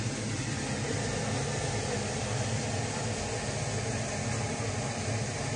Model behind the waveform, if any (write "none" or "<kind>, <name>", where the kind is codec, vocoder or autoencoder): none